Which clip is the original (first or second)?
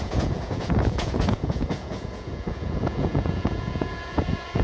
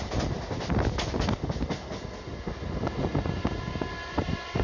second